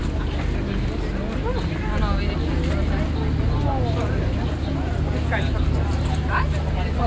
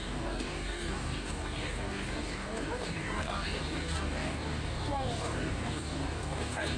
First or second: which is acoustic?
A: first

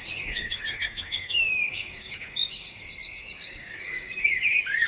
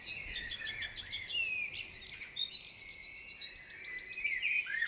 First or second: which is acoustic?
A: second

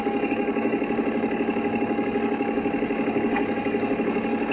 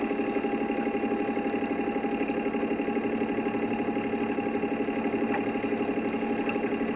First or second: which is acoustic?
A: second